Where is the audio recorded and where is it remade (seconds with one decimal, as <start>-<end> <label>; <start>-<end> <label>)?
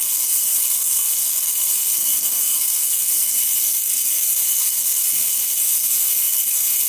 0.0-6.9 remade